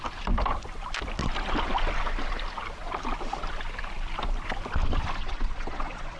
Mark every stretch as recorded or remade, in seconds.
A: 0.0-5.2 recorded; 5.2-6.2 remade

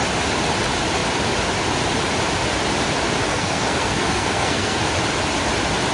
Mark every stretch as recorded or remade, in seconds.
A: 0.0-3.2 recorded; 3.2-4.8 remade; 4.8-5.9 recorded